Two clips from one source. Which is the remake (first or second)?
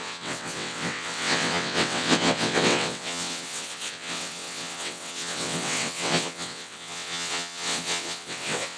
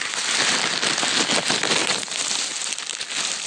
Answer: first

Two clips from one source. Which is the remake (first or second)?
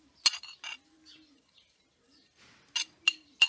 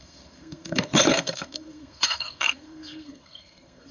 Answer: second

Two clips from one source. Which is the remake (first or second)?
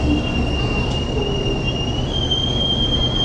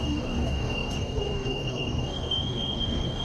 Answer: second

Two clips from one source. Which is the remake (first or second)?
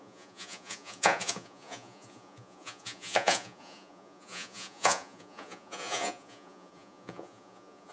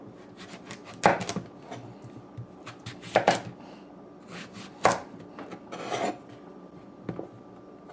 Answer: first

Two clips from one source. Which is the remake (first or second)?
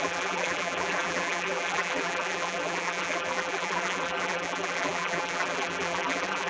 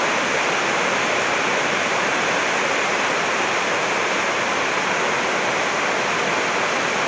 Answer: first